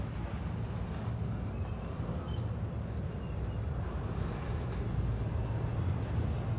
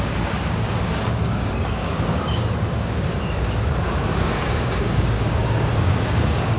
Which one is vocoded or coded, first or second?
second